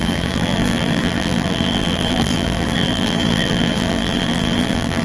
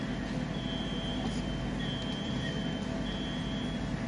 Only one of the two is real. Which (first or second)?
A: second